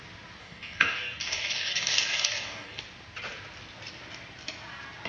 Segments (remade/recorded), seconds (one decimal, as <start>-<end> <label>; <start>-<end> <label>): 0.0-0.4 recorded; 0.4-2.8 remade; 2.8-5.1 recorded